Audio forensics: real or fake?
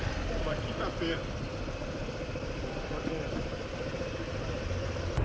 fake